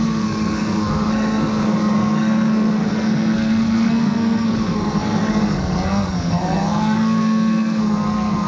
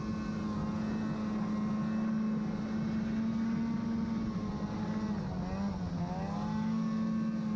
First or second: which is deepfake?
first